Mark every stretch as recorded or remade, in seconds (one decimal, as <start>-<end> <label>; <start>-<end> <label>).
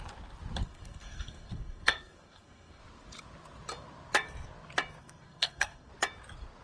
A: 0.0-0.6 recorded; 0.6-2.8 remade; 2.8-5.0 recorded; 5.0-5.9 remade; 5.9-6.6 recorded